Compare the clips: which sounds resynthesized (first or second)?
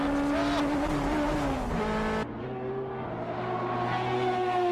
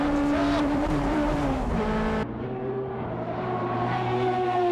second